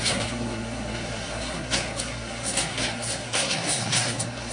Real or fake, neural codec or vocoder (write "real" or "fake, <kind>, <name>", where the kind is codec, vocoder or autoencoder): fake, codec, SNAC